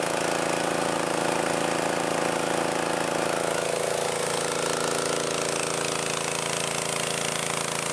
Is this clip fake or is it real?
real